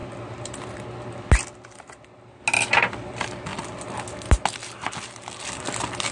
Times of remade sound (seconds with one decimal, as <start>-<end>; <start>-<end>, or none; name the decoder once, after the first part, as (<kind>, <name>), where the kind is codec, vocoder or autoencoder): none